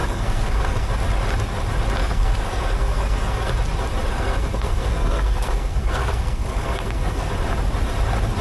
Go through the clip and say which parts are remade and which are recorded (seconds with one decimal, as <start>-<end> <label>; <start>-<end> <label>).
0.0-0.9 remade; 0.9-2.0 recorded; 2.0-3.5 remade; 3.5-4.1 recorded; 4.1-7.3 remade; 7.3-8.4 recorded